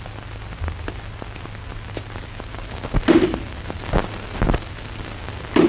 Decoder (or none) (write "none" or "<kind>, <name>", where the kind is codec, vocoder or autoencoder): none